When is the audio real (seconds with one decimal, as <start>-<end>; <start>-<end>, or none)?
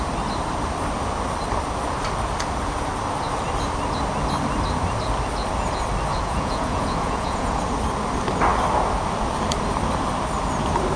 0.0-6.1; 7.6-11.0